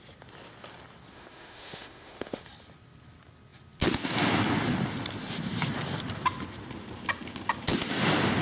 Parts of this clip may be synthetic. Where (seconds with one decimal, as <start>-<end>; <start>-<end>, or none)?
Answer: 1.1-2.4